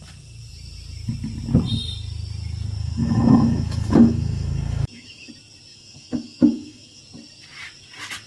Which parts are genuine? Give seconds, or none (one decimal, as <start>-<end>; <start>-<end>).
0.0-2.8; 5.3-5.7; 7.0-8.3